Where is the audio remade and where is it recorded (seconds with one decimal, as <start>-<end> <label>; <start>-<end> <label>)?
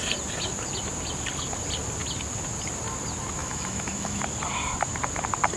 0.0-3.4 recorded; 3.4-4.2 remade; 4.2-5.6 recorded